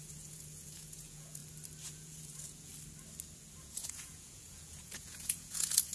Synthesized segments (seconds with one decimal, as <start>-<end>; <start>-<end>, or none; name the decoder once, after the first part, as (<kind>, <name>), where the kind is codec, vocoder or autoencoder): 0.0-1.4 (vocoder, Vocos); 1.9-2.7; 3.6-5.9